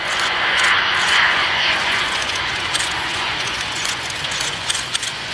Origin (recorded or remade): remade